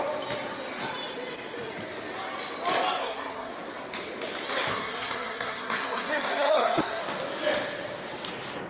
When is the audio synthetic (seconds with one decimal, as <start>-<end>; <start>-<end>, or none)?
3.0-3.5; 4.7-7.0

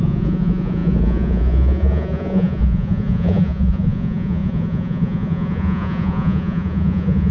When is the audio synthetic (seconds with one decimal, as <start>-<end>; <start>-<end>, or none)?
0.0-7.3

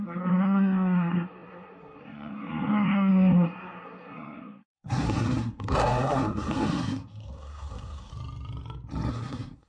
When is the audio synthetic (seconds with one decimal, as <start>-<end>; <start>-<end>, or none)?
0.0-8.1; 9.1-9.7

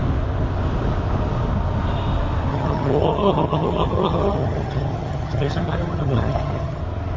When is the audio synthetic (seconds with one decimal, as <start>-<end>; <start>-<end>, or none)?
2.5-6.8

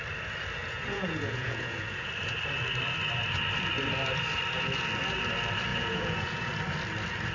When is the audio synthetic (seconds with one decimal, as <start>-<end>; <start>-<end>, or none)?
0.6-2.1; 5.7-6.5

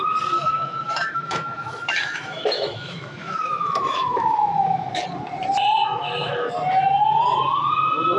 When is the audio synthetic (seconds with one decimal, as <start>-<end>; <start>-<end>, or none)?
0.4-5.0; 5.8-6.5

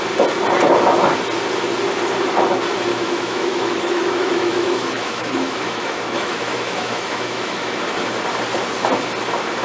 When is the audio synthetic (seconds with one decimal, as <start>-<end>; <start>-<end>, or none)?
2.9-7.8

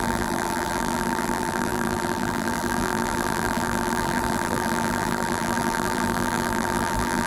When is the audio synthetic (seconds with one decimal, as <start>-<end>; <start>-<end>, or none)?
0.0-7.3